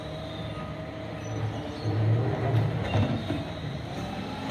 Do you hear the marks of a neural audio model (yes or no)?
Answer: no